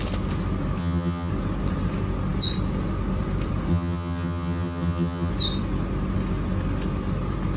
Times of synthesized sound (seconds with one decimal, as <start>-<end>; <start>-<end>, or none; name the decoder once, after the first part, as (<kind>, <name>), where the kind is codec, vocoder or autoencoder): 0.8-1.3 (vocoder, HiFi-GAN); 3.7-5.3